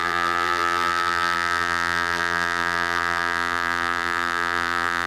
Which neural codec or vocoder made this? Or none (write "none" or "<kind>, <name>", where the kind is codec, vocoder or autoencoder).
vocoder, BigVGAN v2